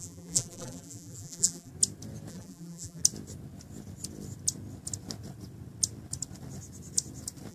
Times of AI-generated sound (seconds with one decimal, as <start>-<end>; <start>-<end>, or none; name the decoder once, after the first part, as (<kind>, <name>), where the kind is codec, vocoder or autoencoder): 0.0-1.7 (vocoder, BigVGAN v2); 2.3-3.0